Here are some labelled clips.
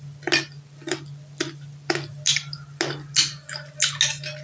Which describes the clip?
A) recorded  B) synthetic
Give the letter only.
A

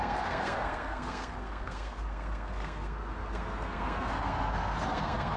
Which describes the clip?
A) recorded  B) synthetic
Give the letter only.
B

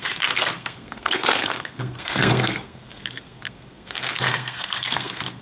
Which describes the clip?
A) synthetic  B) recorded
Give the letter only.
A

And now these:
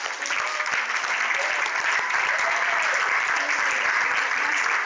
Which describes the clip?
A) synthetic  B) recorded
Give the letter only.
A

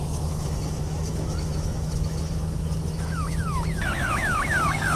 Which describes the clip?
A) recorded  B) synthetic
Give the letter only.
B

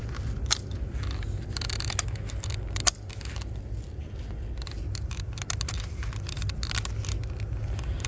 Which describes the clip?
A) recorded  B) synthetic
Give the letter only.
A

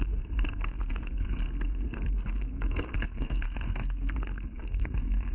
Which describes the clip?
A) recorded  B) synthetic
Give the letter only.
B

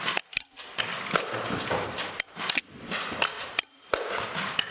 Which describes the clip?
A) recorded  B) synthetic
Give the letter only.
A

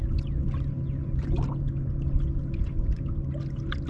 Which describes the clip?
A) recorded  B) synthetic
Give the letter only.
A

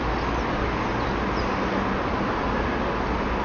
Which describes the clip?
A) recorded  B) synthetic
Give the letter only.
A